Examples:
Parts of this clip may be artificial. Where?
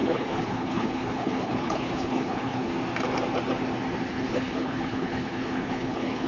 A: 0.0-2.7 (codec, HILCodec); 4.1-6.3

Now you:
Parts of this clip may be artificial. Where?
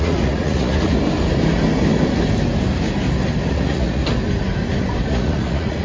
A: 0.0-0.9 (vocoder, Vocos); 3.5-4.0; 5.1-5.8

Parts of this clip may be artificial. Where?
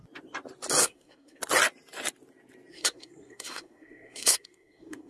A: 0.8-1.4 (codec, SNAC); 2.7-5.1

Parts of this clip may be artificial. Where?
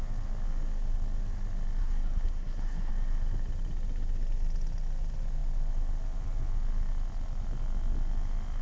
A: 1.8-2.9 (codec, SNAC)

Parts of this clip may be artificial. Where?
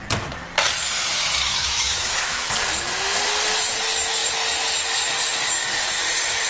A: 1.1-2.5 (autoencoder, DAC-VAE)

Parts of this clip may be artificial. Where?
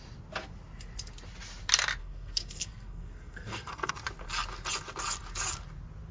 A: 2.0-3.9 (codec, SNAC)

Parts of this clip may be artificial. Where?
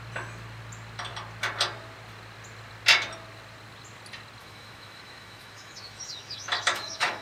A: 4.4-7.2 (autoencoder, DAC-VAE)